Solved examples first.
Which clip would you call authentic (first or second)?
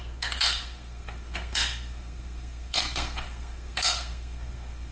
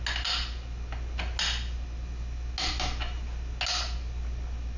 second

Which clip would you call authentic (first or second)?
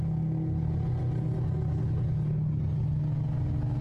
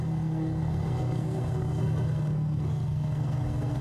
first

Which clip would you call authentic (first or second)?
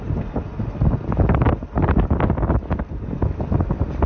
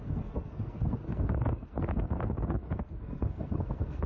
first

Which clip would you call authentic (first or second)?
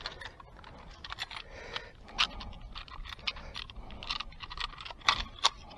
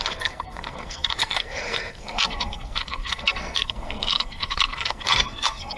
first